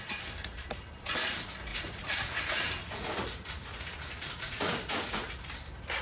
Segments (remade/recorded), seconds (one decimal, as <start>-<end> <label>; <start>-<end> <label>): 0.0-1.7 recorded; 1.7-5.3 remade; 5.3-6.0 recorded